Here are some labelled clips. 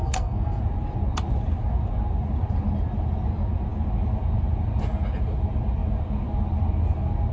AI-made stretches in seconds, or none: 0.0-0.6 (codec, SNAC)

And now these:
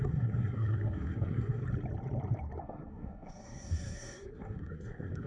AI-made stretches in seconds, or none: 0.0-1.6 (codec, SNAC); 2.6-5.3

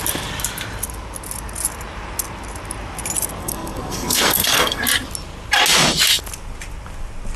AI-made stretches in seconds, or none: 3.4-4.8 (codec, SNAC)

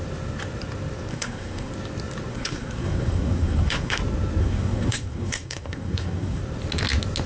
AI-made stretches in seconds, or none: 1.1-1.7 (codec, SNAC); 2.3-4.0; 4.4-6.4